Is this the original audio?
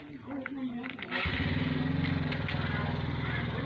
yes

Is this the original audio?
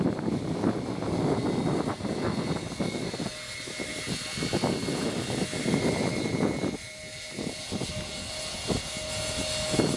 yes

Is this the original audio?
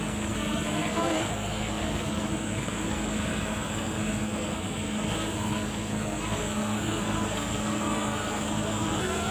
no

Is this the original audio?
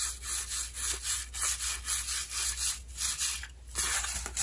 yes